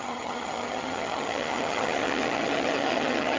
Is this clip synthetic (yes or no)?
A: yes